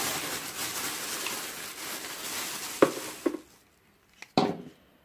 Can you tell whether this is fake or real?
real